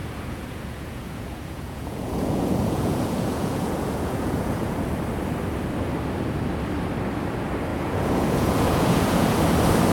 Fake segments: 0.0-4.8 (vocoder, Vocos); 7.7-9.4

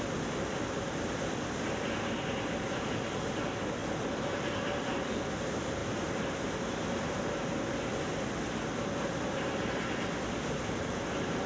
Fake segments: 0.0-3.8 (vocoder, BigVGAN v2); 5.3-5.8; 9.3-11.5

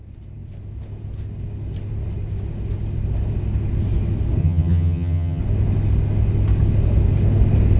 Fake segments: 4.4-5.4 (vocoder, HiFi-GAN)

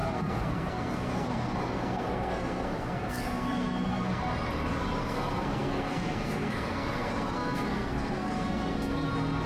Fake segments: 0.0-4.2 (codec, SNAC); 5.0-9.1